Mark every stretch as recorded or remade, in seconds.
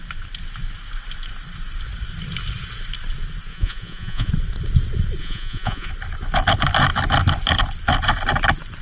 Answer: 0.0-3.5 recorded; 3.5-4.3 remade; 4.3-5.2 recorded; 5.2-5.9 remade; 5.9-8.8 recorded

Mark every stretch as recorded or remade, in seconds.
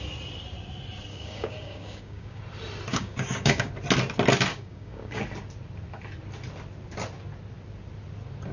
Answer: 0.0-1.1 recorded; 1.1-2.4 remade; 2.4-2.9 recorded; 2.9-3.7 remade; 3.7-4.5 recorded; 4.5-5.2 remade; 5.2-8.5 recorded